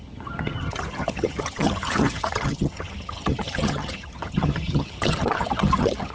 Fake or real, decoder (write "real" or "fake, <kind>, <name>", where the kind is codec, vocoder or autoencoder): fake, vocoder, HiFi-GAN